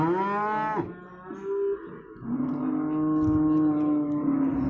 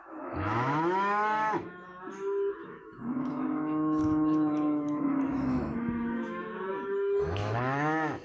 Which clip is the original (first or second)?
first